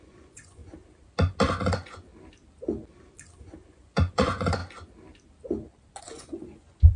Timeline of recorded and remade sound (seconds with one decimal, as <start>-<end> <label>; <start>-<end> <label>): 0.0-0.6 remade; 0.6-1.6 recorded; 1.6-2.1 remade; 2.1-3.7 recorded; 3.7-4.6 remade; 4.6-6.0 recorded; 6.0-7.0 remade